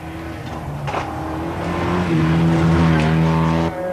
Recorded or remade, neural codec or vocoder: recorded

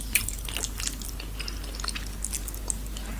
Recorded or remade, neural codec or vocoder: recorded